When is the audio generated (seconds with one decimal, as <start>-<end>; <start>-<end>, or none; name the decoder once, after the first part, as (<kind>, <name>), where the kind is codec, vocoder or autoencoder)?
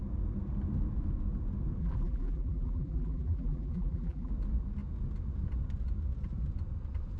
1.8-4.3 (vocoder, BigVGAN v2)